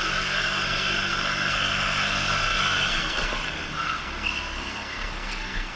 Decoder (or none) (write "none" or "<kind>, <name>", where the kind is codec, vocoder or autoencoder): codec, SNAC